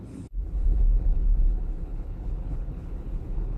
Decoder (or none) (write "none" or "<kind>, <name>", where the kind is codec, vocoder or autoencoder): codec, HILCodec